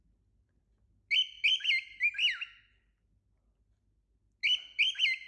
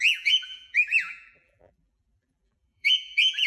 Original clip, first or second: first